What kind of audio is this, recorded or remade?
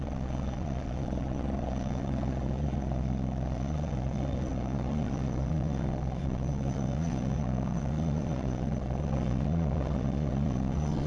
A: remade